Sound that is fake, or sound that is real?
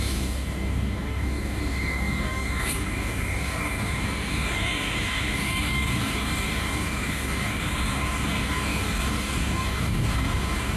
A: fake